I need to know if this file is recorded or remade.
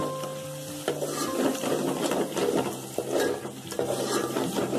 recorded